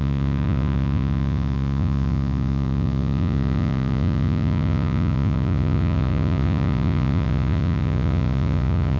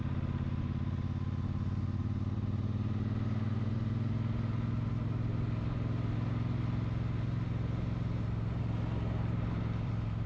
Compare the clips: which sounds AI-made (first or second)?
first